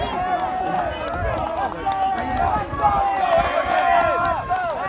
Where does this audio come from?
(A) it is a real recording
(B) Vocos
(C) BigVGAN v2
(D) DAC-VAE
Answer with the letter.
A